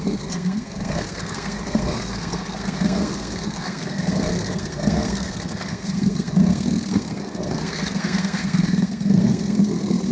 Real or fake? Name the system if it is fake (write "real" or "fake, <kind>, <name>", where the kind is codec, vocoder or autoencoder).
fake, codec, SNAC